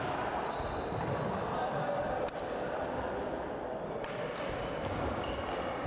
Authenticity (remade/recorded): recorded